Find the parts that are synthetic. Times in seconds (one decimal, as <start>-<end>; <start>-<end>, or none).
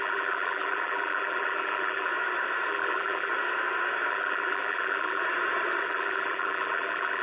0.0-2.1; 2.7-3.3; 4.1-5.2; 5.8-7.2